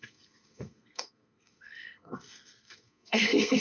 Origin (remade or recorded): remade